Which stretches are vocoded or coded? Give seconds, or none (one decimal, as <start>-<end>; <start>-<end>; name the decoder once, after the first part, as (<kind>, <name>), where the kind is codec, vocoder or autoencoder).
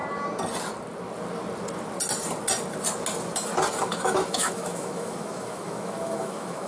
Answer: 3.8-6.7 (autoencoder, DAC-VAE)